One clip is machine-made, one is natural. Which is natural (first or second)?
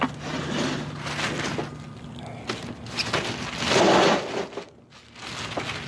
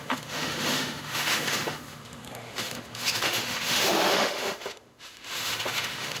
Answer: first